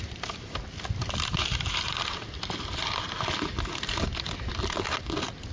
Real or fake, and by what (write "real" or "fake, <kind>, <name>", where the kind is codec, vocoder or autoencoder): real